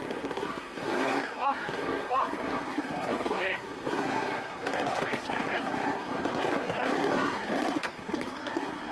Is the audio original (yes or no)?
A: no